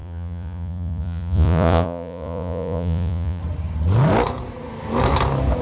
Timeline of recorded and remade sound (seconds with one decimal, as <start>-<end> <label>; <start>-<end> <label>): 0.0-3.4 remade; 3.4-5.6 recorded